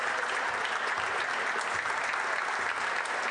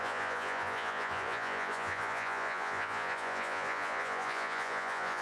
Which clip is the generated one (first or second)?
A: second